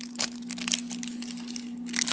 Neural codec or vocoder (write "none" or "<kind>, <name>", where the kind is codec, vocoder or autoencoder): none